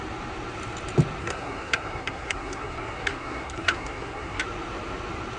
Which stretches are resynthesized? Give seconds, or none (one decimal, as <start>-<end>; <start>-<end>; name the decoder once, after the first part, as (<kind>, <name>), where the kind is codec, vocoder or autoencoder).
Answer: 1.2-4.4 (codec, SNAC)